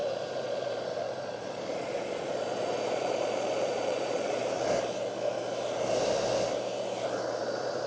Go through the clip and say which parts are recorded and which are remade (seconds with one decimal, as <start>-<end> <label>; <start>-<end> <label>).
0.0-4.4 remade; 4.4-7.4 recorded; 7.4-7.9 remade

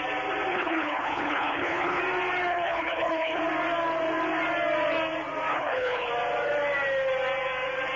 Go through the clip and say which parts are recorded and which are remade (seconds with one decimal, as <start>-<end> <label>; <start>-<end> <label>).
0.0-0.5 recorded; 0.5-2.0 remade; 2.0-2.5 recorded; 2.5-3.4 remade; 3.4-5.5 recorded; 5.5-6.1 remade; 6.1-8.0 recorded

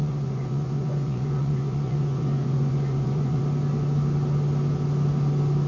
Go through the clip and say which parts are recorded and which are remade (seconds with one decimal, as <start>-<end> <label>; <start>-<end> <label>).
0.0-3.4 remade; 3.4-5.7 recorded

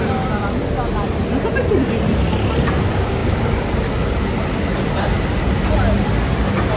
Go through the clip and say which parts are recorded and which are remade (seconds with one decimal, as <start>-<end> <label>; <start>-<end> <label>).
0.0-6.8 recorded

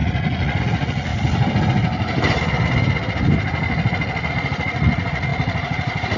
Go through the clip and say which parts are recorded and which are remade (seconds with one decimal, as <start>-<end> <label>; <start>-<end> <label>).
0.0-1.1 remade; 1.1-4.3 recorded; 4.3-6.2 remade

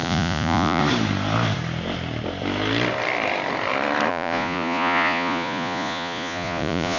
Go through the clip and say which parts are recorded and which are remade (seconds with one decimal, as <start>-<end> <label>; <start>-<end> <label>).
0.0-0.8 remade; 0.8-4.1 recorded; 4.1-7.0 remade